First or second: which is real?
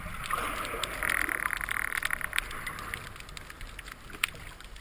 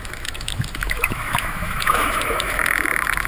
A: first